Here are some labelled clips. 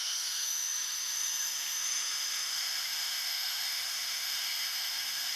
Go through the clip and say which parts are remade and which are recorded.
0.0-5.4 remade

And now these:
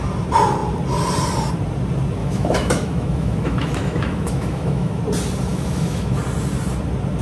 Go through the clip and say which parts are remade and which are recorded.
0.0-2.2 recorded; 2.2-5.0 remade; 5.0-5.5 recorded; 5.5-6.2 remade; 6.2-7.2 recorded

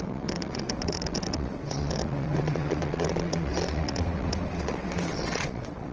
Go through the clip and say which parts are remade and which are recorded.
0.0-5.9 remade

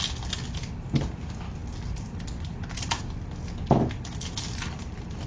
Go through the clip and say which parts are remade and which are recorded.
0.0-5.3 recorded